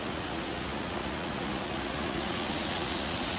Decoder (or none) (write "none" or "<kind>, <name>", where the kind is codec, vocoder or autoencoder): vocoder, Vocos